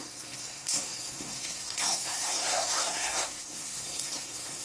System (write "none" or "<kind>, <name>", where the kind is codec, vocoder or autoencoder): codec, SNAC